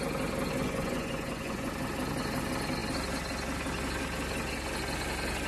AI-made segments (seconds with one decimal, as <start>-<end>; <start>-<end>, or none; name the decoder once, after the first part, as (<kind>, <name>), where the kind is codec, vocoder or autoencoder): 0.6-1.7 (vocoder, Vocos)